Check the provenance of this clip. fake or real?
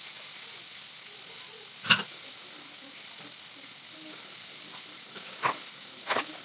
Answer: real